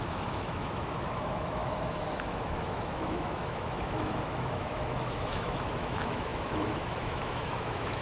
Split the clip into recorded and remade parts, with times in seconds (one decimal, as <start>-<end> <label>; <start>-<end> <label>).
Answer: 0.0-8.0 remade